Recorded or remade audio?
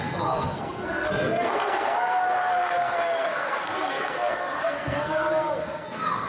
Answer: remade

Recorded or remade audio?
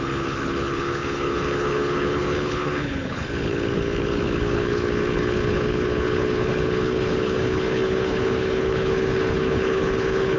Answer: remade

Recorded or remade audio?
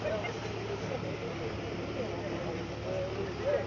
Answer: recorded